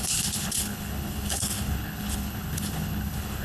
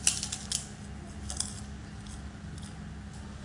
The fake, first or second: first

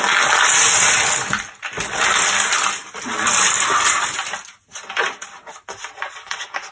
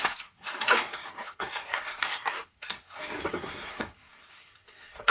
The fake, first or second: second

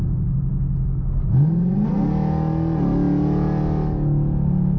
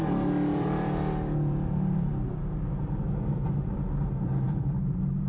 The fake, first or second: second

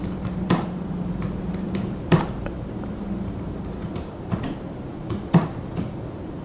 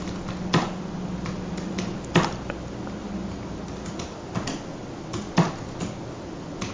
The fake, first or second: first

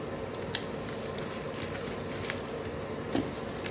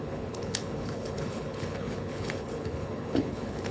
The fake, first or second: second